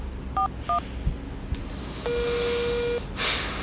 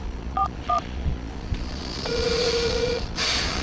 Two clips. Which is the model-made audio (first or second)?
second